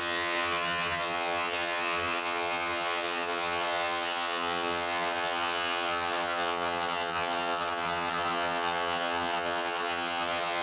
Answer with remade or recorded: remade